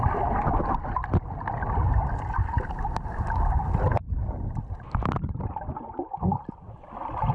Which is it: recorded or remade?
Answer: recorded